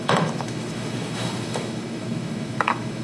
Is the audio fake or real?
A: fake